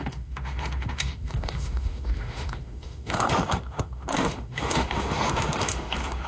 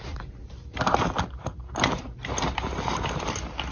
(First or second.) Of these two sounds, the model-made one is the first